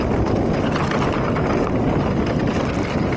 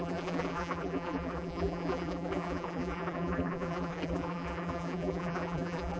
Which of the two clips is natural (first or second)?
first